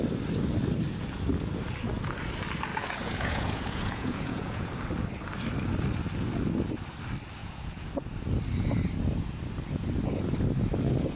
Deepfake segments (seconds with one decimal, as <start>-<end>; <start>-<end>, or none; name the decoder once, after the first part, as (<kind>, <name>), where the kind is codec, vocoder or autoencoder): 2.7-4.7 (vocoder, Vocos); 7.4-7.9